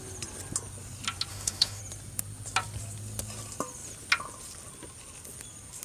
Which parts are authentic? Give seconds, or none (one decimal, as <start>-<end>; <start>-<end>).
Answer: 0.0-1.3; 1.8-5.8